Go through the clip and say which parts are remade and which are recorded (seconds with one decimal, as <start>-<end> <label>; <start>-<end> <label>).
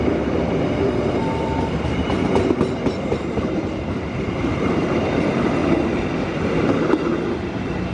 0.0-2.1 remade; 2.1-2.8 recorded; 2.8-5.6 remade; 5.6-7.4 recorded; 7.4-7.9 remade